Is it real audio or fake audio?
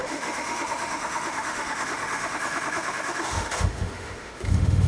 fake